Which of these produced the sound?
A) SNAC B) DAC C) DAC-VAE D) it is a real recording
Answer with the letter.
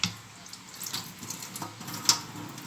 D